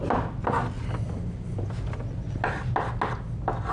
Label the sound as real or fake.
real